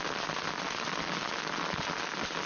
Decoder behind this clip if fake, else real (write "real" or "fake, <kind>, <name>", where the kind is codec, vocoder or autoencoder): real